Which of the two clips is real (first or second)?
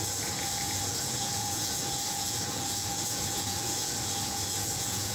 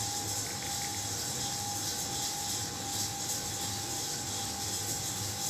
second